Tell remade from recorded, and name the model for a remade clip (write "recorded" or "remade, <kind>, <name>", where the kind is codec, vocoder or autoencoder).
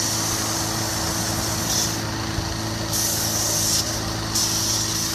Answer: recorded